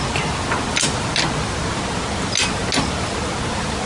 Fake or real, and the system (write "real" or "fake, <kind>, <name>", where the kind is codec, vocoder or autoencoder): real